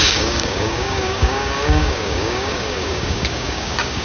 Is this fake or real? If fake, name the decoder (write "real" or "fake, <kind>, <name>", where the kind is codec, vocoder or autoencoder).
fake, codec, DAC